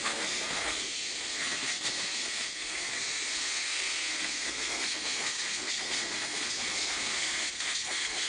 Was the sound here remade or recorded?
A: remade